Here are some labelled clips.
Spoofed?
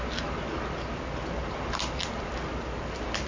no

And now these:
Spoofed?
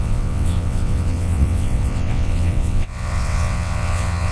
yes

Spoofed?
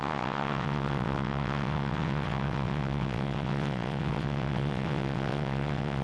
yes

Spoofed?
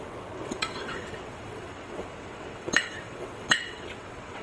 yes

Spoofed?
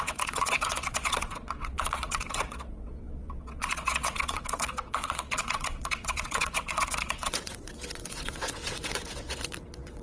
yes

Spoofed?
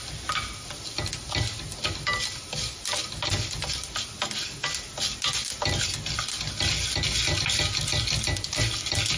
no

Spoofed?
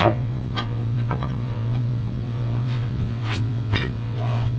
yes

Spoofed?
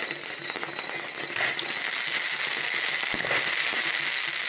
no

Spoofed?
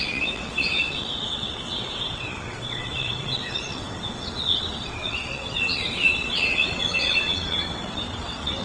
yes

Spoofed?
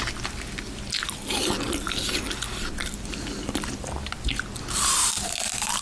no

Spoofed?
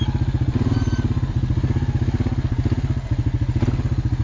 no